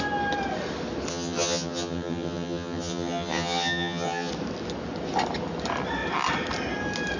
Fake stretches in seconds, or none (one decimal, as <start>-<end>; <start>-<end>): 1.1-4.3